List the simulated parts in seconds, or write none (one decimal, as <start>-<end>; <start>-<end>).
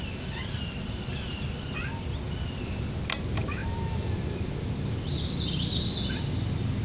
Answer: 3.6-4.5